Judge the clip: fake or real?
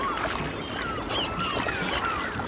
real